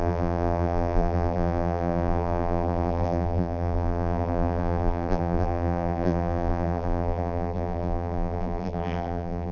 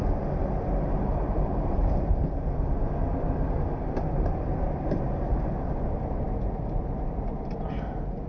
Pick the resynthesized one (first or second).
first